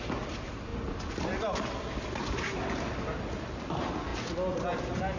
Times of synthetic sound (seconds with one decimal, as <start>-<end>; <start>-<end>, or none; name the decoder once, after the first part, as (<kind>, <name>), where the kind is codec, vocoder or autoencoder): none